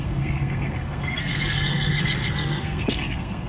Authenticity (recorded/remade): remade